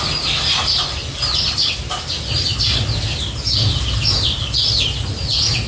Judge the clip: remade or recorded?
recorded